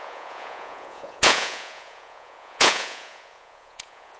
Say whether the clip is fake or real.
fake